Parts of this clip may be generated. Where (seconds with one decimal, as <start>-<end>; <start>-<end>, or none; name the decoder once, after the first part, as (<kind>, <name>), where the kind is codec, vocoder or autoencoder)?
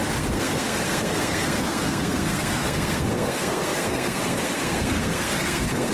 0.0-5.9 (codec, SNAC)